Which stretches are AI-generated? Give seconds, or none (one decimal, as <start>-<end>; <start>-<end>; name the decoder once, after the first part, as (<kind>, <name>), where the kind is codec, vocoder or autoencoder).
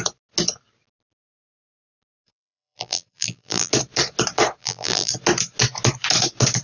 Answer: 2.2-3.7 (vocoder, BigVGAN v2); 4.6-5.1